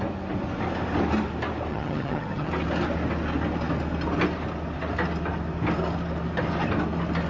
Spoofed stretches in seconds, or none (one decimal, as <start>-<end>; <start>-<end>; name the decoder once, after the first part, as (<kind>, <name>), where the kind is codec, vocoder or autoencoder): 1.7-2.5 (vocoder, HiFi-GAN)